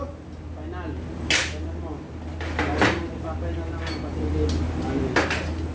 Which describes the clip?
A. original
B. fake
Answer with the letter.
A